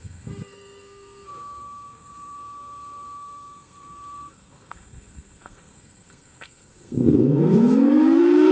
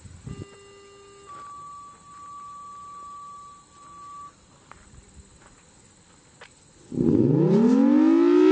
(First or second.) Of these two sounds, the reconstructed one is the first